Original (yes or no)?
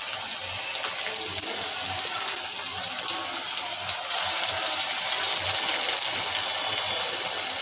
yes